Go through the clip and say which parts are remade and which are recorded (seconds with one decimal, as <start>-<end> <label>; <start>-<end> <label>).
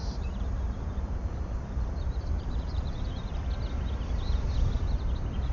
0.0-3.3 remade; 3.3-5.5 recorded